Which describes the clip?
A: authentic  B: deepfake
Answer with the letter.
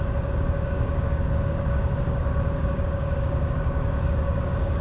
B